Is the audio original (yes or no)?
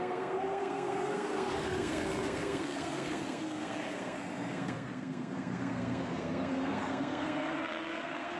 no